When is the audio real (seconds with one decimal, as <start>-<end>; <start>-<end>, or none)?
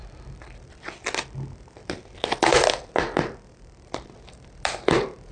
0.0-5.3